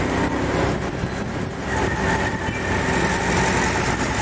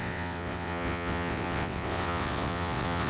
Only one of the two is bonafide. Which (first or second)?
first